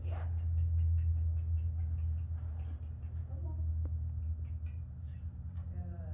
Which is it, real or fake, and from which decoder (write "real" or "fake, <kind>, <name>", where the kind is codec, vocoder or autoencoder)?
real